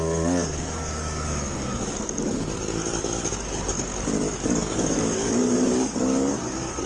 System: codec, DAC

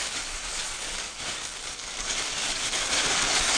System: codec, DAC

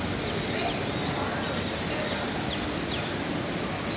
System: none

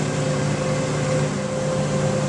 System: none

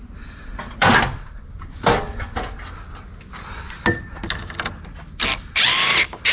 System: none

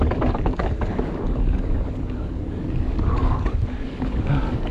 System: codec, DAC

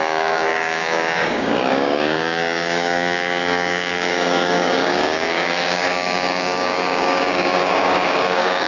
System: codec, DAC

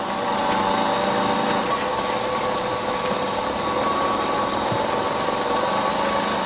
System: none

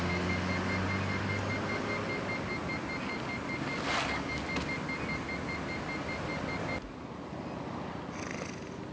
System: none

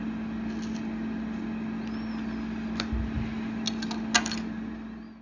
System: none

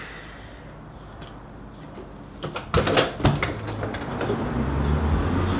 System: none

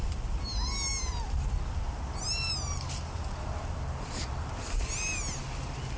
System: none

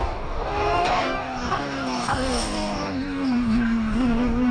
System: codec, DAC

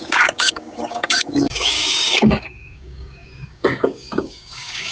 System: codec, DAC